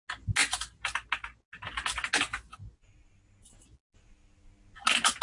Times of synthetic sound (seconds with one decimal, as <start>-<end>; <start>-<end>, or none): none